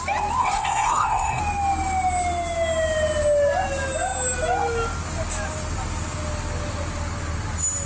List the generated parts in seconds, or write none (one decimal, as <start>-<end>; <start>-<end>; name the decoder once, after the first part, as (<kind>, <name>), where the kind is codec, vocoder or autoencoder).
0.4-1.4 (codec, SNAC)